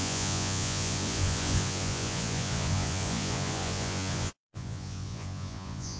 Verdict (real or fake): fake